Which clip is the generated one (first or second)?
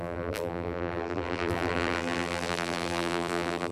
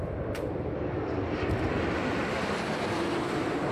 first